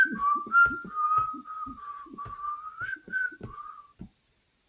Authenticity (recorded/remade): recorded